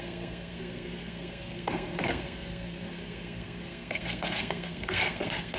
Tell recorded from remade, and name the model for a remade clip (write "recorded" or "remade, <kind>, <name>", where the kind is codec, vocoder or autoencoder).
remade, codec, SNAC